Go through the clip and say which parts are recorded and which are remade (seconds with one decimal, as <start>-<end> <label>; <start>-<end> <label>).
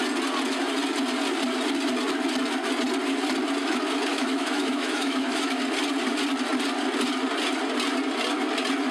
0.0-4.1 recorded; 4.1-5.6 remade; 5.6-8.9 recorded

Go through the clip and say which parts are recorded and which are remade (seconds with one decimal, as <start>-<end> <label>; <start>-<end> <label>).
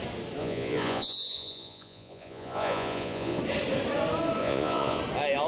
0.0-0.4 recorded; 0.4-3.4 remade; 3.4-4.4 recorded; 4.4-5.0 remade; 5.0-5.5 recorded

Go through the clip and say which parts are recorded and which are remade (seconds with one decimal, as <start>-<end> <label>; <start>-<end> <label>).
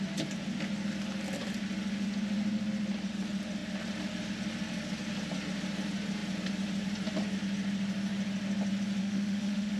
0.0-9.0 recorded; 9.0-9.8 remade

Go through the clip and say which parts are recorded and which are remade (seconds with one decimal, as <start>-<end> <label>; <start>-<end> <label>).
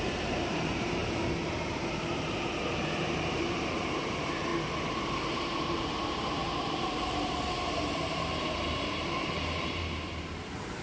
0.0-4.5 remade; 4.5-5.1 recorded; 5.1-10.8 remade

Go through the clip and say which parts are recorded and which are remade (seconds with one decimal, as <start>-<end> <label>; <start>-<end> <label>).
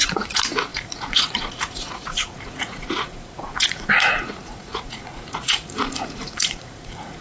0.0-7.2 remade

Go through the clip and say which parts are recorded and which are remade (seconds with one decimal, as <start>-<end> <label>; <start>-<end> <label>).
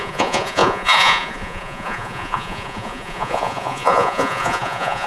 0.0-5.1 remade